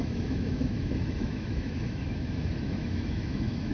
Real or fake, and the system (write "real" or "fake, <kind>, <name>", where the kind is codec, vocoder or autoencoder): fake, autoencoder, DAC-VAE